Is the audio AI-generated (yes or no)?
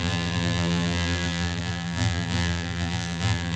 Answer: yes